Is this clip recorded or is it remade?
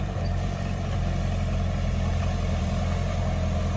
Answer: recorded